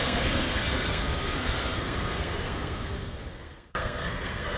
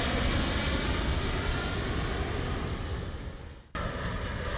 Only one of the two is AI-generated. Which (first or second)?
first